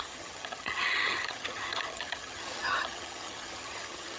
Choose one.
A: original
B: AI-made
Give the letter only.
B